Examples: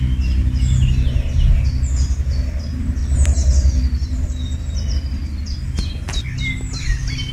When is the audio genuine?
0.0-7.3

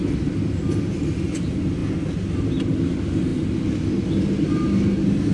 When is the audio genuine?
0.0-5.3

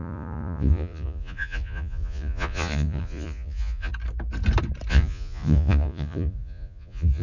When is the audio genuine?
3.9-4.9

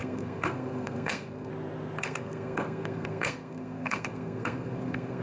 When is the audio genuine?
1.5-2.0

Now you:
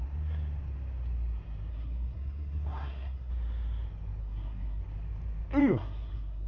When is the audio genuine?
0.0-1.7; 3.3-4.2; 4.8-5.6

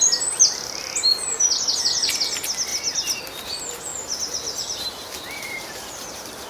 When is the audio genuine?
0.0-6.5

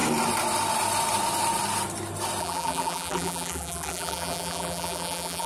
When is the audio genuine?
0.0-2.4